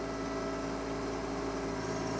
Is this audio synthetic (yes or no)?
no